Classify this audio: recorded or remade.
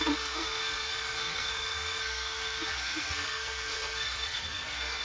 remade